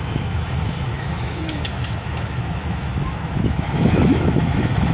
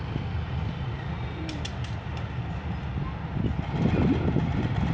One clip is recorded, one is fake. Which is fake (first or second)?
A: first